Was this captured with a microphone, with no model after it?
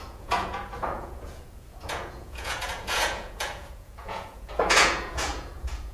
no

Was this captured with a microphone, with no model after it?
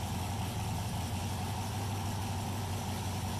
yes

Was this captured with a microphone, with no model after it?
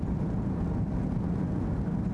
yes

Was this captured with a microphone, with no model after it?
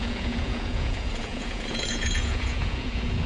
no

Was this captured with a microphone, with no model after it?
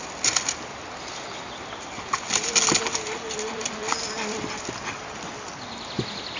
yes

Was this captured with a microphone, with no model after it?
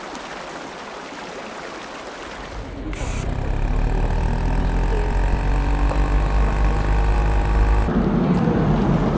yes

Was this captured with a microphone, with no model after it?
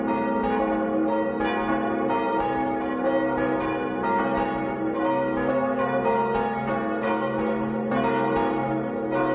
yes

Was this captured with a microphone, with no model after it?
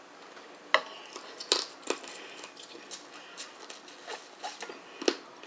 yes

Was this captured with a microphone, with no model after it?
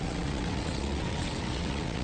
no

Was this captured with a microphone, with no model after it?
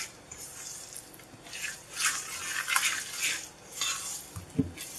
yes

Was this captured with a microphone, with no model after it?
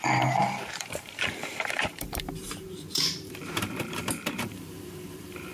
no